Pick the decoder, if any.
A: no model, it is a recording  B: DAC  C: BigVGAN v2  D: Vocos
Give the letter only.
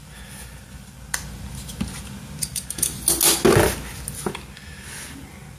A